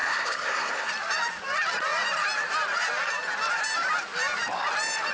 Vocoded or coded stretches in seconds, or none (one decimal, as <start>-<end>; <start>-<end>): 0.0-0.9